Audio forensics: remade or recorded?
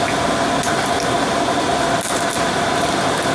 recorded